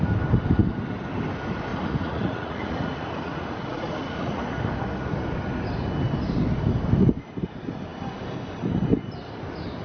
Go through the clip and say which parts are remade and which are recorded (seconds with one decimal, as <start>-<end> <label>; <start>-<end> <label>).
0.0-1.7 recorded; 1.7-4.4 remade; 4.4-9.8 recorded